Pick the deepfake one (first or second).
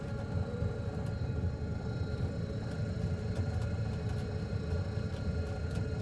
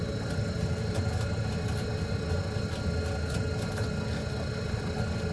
first